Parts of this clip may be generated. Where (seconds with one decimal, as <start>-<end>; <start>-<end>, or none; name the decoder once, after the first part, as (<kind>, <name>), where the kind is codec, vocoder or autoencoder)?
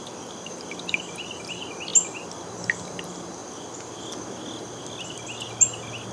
none